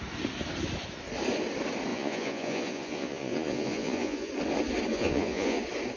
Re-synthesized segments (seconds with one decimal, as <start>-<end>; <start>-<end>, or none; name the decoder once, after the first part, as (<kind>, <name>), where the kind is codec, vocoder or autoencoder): 1.9-4.3 (vocoder, Vocos); 4.9-5.6